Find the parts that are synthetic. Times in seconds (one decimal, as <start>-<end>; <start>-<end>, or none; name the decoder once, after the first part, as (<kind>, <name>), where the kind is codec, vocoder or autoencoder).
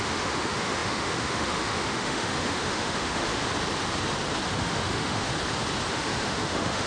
0.0-3.4 (autoencoder, DAC-VAE); 4.5-5.3; 5.9-6.9